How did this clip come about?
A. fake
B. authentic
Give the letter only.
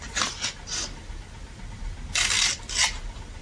B